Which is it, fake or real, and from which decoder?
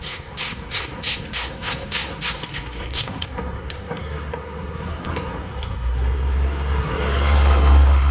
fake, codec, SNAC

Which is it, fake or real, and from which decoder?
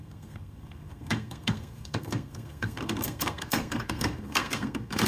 fake, codec, SNAC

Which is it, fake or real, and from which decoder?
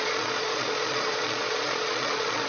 fake, vocoder, Vocos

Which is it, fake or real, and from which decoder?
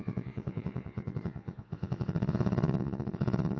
fake, vocoder, Vocos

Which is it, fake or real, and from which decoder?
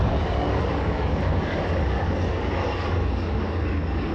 fake, codec, DAC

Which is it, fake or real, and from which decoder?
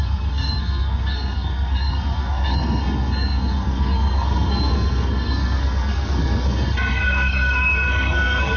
fake, codec, SNAC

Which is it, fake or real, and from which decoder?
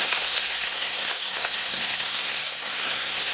fake, codec, SNAC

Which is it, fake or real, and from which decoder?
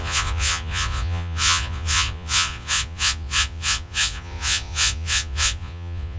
fake, vocoder, Vocos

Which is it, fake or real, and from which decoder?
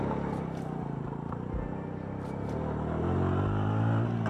real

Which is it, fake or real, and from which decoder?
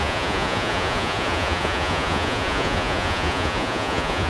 fake, vocoder, Vocos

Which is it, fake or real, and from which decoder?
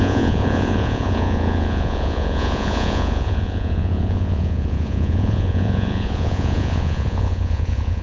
fake, vocoder, Vocos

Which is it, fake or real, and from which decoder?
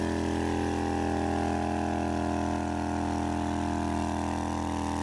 real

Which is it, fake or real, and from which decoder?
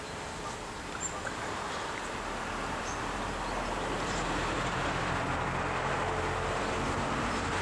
fake, vocoder, BigVGAN v2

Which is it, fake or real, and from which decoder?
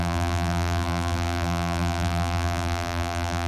fake, vocoder, BigVGAN v2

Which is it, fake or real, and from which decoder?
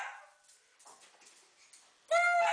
real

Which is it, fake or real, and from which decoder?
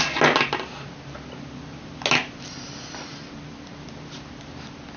real